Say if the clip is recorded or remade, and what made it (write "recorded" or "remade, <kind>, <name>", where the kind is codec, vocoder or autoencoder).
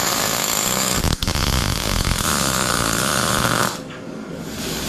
remade, codec, DAC